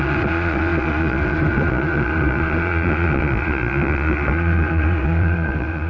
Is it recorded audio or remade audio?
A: remade